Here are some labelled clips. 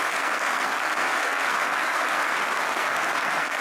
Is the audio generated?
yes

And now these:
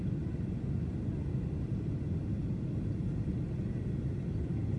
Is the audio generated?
no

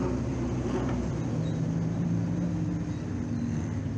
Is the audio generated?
no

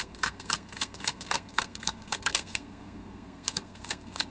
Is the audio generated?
yes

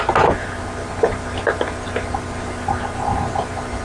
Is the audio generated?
no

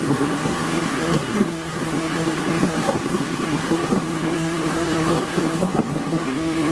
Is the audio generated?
yes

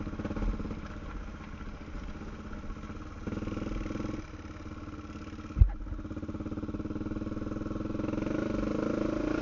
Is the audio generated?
no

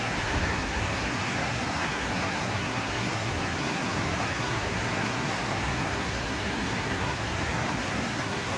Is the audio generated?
yes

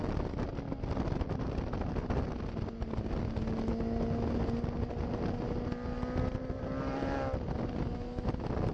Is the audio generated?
no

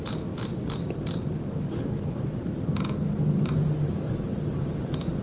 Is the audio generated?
no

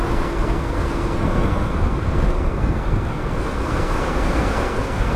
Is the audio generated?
yes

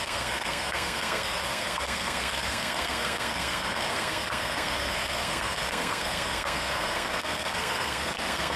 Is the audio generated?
yes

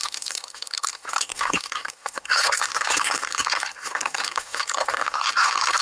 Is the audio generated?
yes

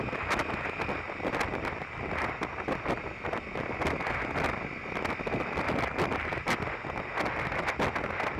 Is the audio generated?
no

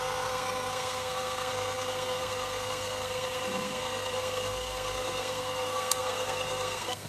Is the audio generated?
yes